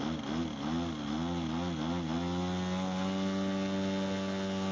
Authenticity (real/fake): real